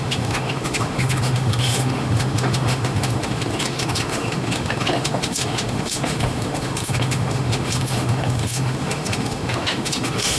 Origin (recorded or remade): remade